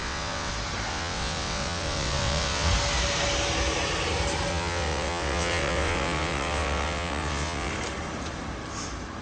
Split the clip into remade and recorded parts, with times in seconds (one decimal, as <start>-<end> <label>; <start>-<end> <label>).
0.0-0.5 remade; 0.5-0.9 recorded; 0.9-2.7 remade; 2.7-4.5 recorded; 4.5-7.7 remade; 7.7-9.2 recorded